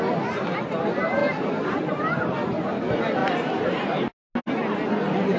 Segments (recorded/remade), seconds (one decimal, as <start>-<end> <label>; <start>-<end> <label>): 0.0-5.4 recorded